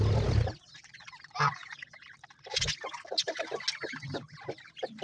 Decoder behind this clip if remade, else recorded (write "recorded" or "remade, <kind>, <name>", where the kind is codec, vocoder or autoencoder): recorded